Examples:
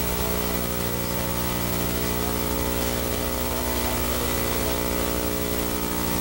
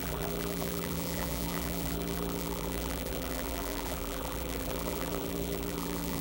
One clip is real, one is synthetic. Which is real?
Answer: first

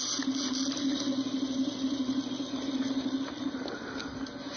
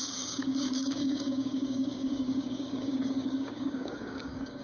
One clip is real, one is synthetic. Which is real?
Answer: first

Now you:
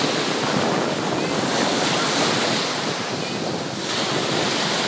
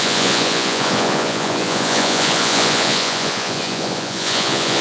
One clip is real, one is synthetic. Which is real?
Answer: first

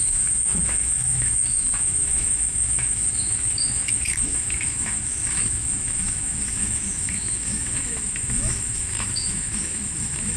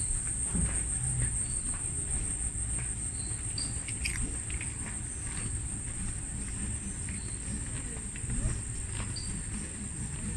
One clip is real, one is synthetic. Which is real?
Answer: second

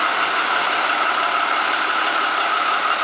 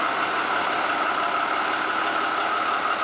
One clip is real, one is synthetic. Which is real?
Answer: second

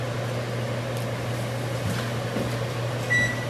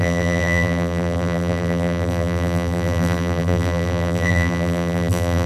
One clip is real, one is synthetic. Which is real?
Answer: first